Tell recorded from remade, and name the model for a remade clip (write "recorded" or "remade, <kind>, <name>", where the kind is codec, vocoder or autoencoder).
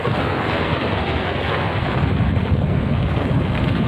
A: remade, codec, SNAC